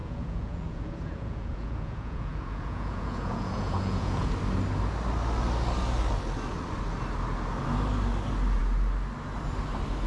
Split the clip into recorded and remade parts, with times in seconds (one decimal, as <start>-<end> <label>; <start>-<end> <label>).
0.0-4.3 remade; 4.3-10.1 recorded